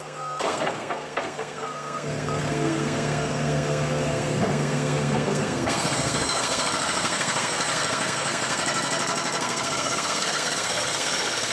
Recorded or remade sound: remade